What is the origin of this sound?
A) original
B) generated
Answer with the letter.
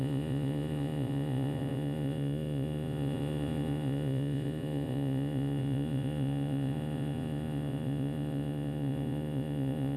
B